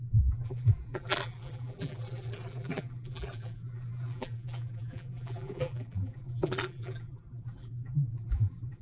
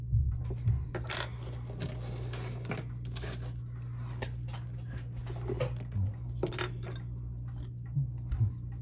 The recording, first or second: second